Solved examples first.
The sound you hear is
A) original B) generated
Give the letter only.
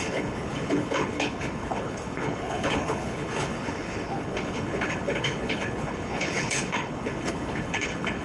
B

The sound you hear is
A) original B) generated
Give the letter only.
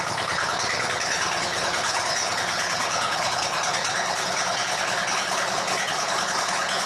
B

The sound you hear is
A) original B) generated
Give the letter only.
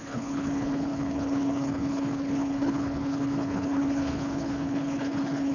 B